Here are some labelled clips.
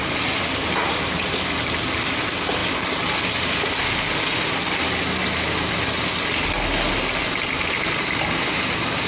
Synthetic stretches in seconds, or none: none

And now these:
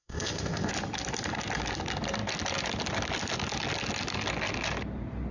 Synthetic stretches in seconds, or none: 0.0-0.7 (codec, ZipCodec)

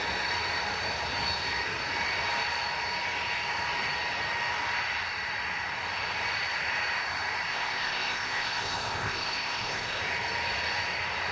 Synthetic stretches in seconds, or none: 7.5-10.0 (codec, ZipCodec)

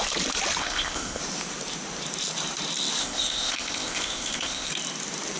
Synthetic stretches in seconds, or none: 0.6-1.2 (codec, ZipCodec); 3.0-4.7

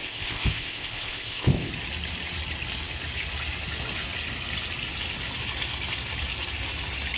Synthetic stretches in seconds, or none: 0.0-1.7 (codec, ZipCodec)

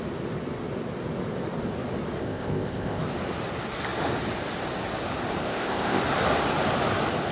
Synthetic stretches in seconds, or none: 2.2-3.0 (codec, ZipCodec); 5.4-6.0

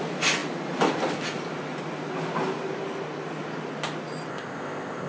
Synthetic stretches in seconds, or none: 4.3-5.1 (codec, ZipCodec)